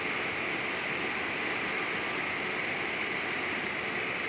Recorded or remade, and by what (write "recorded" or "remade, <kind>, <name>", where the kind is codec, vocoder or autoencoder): recorded